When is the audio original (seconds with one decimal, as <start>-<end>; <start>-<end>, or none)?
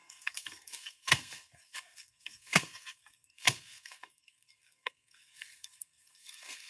none